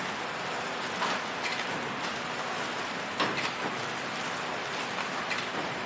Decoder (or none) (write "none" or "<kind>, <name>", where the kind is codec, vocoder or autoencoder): none